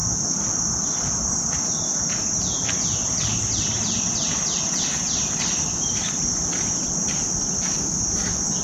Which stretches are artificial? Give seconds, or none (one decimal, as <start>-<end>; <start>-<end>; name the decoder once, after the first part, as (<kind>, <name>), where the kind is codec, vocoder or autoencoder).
none